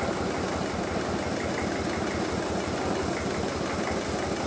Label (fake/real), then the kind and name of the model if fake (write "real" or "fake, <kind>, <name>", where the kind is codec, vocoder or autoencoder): real